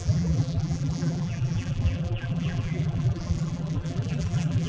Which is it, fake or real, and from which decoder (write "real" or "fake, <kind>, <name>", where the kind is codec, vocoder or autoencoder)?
fake, vocoder, BigVGAN v2